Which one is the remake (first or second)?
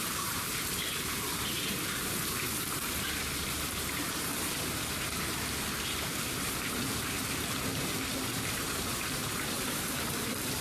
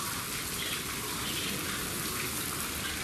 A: first